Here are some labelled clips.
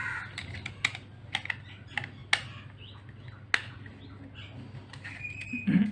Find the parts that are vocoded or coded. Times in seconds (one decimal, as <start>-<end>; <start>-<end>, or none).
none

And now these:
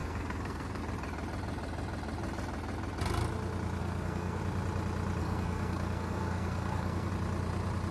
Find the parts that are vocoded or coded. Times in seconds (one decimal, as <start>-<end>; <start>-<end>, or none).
0.0-0.8; 3.8-4.4; 5.2-7.1

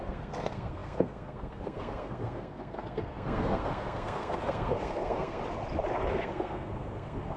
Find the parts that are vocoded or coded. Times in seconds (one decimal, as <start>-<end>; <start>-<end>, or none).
0.0-5.4; 6.1-7.4

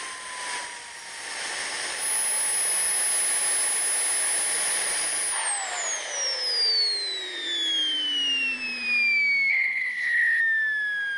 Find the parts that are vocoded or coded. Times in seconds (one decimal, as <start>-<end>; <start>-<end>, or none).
9.5-10.4

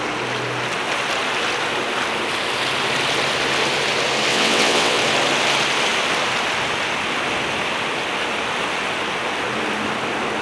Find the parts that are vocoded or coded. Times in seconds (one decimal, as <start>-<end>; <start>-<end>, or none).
4.3-5.0

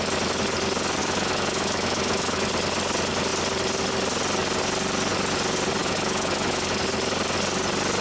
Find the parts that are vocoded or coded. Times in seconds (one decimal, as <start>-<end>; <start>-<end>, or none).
1.0-2.5; 5.8-6.8

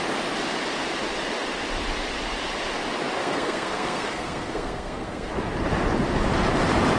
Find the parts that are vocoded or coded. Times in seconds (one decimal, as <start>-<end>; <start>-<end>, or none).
3.2-5.3